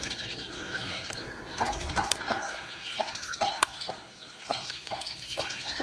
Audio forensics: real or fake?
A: fake